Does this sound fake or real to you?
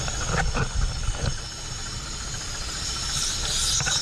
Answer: real